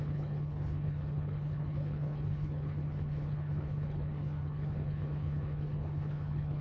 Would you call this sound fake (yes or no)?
yes